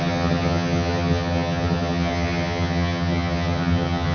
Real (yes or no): no